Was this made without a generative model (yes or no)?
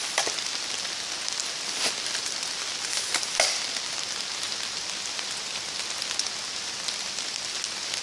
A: yes